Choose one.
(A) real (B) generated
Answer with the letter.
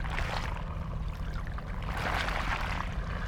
A